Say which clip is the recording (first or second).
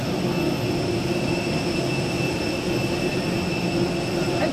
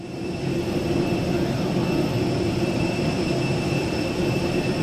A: first